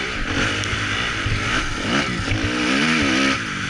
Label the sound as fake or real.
real